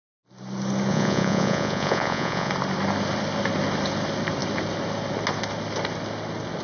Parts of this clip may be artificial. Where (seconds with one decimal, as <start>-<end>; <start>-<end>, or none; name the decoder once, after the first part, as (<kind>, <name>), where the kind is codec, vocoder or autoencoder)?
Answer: 0.9-2.5 (vocoder, Vocos)